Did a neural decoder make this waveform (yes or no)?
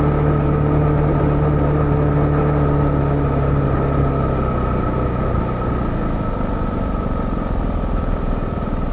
no